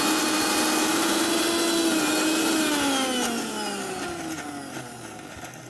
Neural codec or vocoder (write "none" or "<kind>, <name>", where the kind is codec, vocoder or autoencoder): none